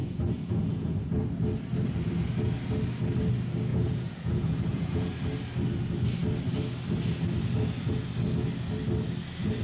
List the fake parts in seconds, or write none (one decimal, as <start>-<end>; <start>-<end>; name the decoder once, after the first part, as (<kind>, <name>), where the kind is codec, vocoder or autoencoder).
0.0-1.1 (vocoder, Vocos); 3.7-5.1